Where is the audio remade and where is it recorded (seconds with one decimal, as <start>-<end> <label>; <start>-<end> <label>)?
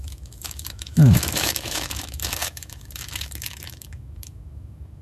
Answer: 0.0-5.0 remade